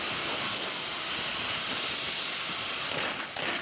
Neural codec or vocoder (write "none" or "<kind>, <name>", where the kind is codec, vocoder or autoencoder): none